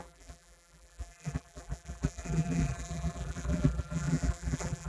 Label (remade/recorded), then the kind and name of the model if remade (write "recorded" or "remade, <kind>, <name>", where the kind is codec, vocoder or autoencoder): remade, vocoder, BigVGAN v2